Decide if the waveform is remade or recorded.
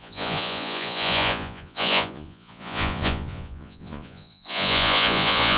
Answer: remade